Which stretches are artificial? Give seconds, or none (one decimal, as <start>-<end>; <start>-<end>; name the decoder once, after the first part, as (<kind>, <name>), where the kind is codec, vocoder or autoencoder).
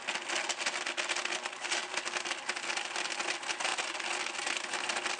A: none